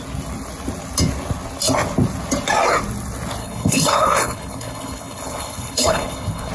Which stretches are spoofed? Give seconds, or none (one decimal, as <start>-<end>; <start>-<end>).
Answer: 3.4-6.5